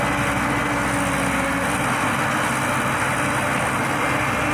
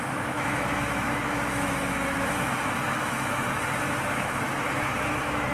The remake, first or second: second